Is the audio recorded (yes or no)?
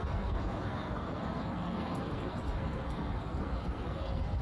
no